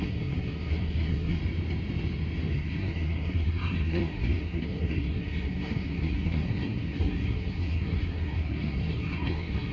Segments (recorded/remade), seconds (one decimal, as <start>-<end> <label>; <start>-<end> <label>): 0.0-1.4 remade; 1.4-2.5 recorded; 2.5-9.7 remade